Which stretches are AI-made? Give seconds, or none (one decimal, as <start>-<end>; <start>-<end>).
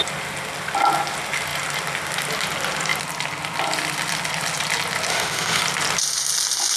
5.1-5.6